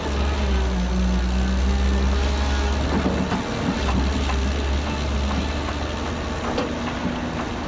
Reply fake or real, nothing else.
real